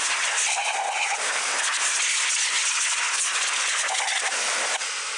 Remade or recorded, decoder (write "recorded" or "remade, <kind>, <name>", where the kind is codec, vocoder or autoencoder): recorded